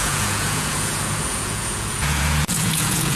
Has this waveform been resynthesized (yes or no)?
yes